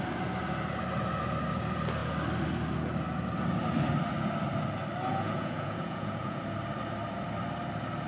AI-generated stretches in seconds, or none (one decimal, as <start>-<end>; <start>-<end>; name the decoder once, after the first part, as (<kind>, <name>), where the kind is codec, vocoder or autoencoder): 5.1-6.4 (vocoder, Vocos)